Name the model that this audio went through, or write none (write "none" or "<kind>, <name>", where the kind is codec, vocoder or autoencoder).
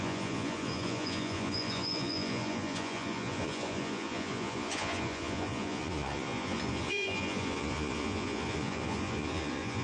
vocoder, Vocos